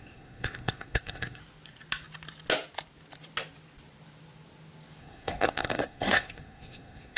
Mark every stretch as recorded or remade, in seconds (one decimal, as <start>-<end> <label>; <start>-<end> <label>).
0.0-1.4 remade; 1.4-5.0 recorded; 5.0-7.2 remade